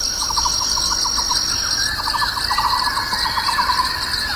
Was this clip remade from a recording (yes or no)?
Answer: no